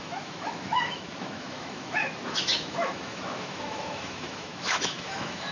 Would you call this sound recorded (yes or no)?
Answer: no